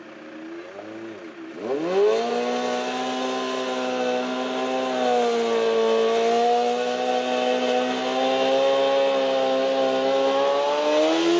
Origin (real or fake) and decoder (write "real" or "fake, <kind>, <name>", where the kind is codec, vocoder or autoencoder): real